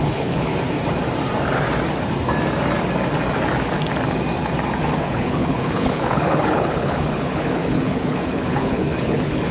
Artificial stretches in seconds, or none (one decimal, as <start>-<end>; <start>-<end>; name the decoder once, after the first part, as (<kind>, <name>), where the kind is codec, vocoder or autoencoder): 0.0-0.5 (codec, HILCodec); 5.0-9.5